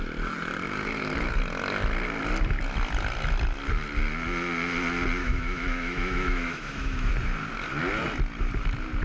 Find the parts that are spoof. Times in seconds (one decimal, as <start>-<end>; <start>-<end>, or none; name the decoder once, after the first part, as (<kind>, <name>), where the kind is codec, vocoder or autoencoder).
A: 5.2-7.1 (autoencoder, DAC-VAE)